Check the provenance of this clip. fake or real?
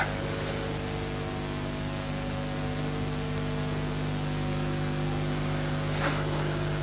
real